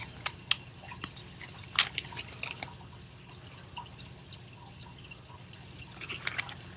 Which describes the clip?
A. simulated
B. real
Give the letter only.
B